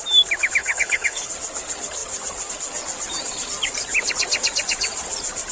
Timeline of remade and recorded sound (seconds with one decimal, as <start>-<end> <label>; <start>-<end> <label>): 0.0-0.6 recorded; 0.6-1.3 remade; 1.3-5.5 recorded